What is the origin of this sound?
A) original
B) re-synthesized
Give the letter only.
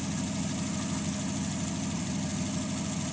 A